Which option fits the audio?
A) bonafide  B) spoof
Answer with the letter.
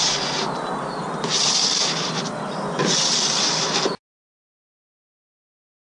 A